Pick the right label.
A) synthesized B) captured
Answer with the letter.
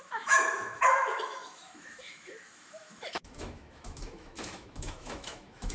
A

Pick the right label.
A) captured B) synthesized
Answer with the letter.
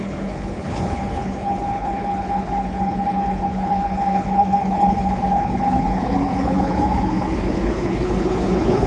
B